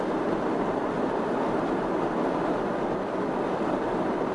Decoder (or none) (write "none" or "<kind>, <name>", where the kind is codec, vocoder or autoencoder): none